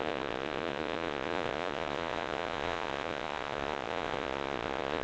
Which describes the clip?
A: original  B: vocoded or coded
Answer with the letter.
B